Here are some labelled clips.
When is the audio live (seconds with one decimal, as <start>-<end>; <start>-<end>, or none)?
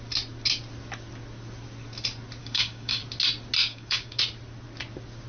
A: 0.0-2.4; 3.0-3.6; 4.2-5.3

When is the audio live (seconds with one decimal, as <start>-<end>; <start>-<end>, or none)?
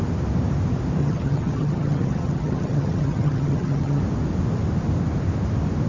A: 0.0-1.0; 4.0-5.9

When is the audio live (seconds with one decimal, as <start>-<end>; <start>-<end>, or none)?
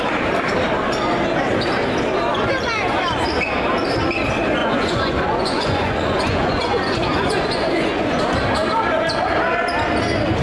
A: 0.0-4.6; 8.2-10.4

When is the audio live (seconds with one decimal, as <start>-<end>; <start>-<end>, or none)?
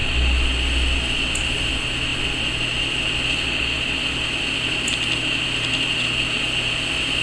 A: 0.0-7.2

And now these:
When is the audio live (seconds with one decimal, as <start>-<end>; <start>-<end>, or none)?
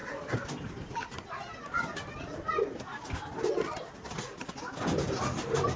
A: 0.0-5.8